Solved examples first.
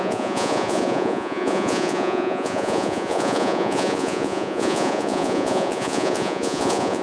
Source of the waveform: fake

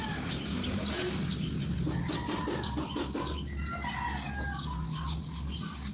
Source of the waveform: real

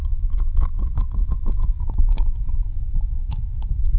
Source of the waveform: fake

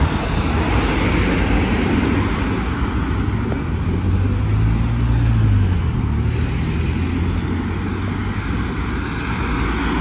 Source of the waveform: real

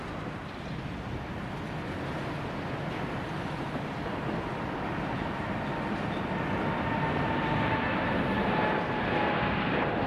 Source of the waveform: real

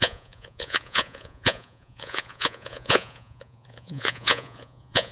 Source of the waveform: fake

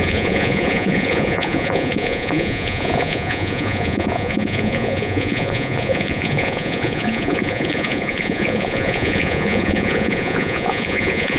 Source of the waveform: fake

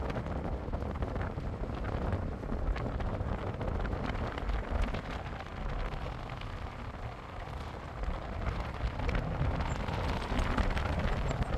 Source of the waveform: real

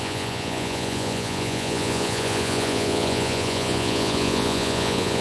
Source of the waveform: fake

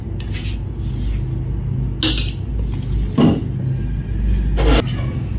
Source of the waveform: real